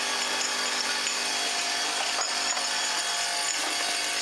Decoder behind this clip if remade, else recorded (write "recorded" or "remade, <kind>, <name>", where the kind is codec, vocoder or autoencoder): recorded